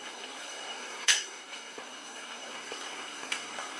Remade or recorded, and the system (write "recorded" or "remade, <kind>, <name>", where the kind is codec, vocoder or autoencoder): remade, codec, SNAC